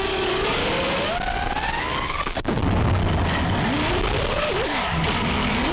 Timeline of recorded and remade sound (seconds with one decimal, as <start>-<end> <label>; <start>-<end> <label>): 0.0-0.6 remade; 0.6-1.8 recorded; 1.8-3.0 remade; 3.0-4.5 recorded; 4.5-5.7 remade